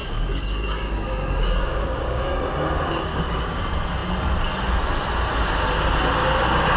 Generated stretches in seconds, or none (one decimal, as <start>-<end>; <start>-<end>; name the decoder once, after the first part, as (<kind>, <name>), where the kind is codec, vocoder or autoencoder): 0.0-2.4 (codec, DAC); 3.1-3.6

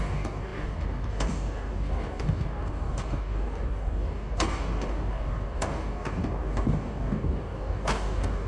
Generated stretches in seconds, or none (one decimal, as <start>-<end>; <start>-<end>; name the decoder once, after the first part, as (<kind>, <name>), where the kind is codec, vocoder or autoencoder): 0.0-8.5 (codec, DAC)

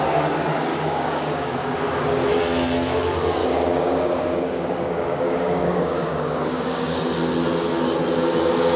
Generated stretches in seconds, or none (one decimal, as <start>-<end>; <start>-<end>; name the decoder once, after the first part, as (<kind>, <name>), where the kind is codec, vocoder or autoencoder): 0.7-2.4 (codec, DAC); 3.4-7.0

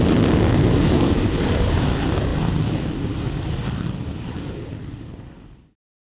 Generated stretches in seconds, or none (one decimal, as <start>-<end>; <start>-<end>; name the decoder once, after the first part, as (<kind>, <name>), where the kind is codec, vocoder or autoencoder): none

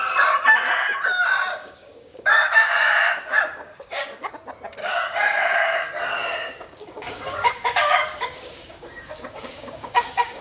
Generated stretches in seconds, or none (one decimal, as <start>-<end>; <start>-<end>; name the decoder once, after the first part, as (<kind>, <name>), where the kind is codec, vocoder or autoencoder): 1.5-4.3 (codec, DAC); 4.8-5.9; 6.4-10.4

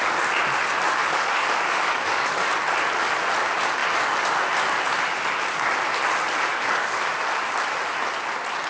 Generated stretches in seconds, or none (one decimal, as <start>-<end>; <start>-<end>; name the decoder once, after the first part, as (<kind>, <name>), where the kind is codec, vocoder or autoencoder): 1.0-2.5 (codec, DAC); 6.5-7.1

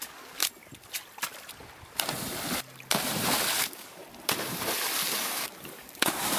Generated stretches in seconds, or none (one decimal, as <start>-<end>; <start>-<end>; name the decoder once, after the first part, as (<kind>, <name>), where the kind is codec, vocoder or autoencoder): 0.0-0.4 (codec, DAC); 3.6-4.0; 5.1-6.4